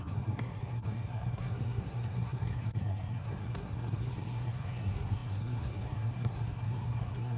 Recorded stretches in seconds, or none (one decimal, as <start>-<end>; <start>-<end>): none

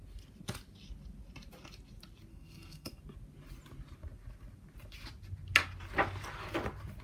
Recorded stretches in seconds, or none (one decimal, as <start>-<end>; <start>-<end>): 0.0-2.3; 3.0-7.0

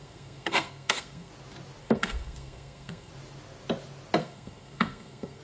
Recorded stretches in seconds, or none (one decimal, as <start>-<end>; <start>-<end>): 1.3-1.8; 3.1-4.2

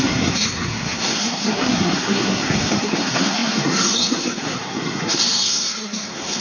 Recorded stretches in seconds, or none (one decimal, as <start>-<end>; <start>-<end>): none

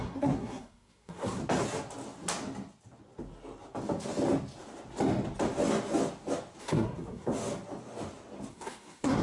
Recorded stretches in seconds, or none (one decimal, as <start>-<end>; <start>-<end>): 1.4-6.6; 7.3-8.5

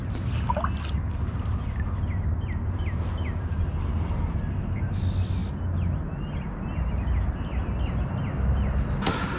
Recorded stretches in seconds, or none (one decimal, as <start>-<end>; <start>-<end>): 0.0-9.4